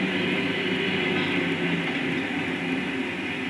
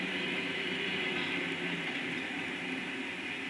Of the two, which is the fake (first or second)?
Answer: second